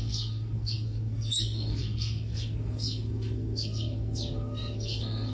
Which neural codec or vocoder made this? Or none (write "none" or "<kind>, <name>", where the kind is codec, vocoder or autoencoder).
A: codec, SNAC